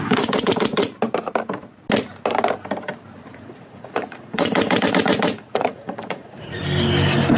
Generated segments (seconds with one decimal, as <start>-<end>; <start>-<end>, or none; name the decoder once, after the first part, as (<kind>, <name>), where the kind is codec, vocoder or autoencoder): 0.0-0.9 (vocoder, Vocos); 3.5-6.6